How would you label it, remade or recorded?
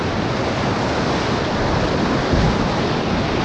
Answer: recorded